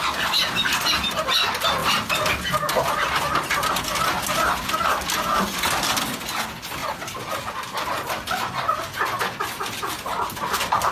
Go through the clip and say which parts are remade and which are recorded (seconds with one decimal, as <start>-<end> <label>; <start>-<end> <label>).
0.0-10.9 recorded